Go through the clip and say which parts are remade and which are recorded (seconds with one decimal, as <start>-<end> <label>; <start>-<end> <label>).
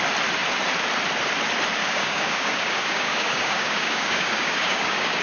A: 0.0-1.8 recorded; 1.8-5.2 remade